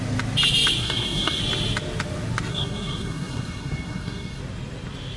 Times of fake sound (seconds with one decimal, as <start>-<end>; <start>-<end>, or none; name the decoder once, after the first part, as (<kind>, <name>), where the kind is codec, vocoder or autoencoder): 0.8-1.4 (codec, SNAC); 2.5-4.4